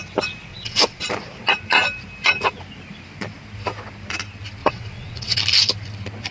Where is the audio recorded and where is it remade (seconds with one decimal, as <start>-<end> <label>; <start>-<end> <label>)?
0.0-0.5 recorded; 0.5-1.1 remade; 1.1-4.6 recorded; 4.6-5.4 remade; 5.4-6.3 recorded